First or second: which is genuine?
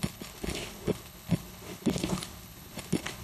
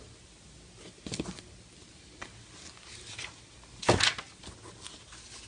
second